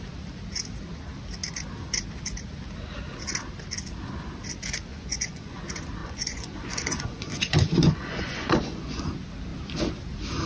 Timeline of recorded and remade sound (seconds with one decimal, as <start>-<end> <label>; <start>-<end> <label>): 0.0-4.9 recorded; 4.9-5.6 remade; 5.6-6.0 recorded; 6.0-9.0 remade; 9.0-10.5 recorded